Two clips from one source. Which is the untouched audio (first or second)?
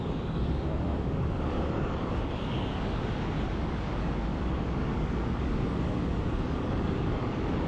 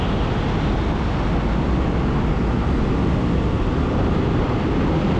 second